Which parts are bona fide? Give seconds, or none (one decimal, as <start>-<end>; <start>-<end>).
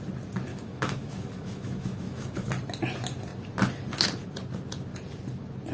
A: 0.0-0.5; 2.5-5.7